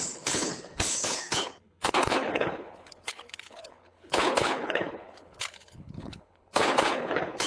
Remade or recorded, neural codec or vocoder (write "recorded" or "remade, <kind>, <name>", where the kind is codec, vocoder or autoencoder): remade, codec, HILCodec